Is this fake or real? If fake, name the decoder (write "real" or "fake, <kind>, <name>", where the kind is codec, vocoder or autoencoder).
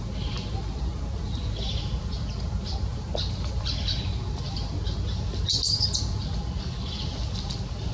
real